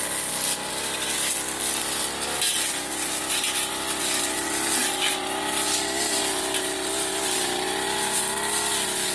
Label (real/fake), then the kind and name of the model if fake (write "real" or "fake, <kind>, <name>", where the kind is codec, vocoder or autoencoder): real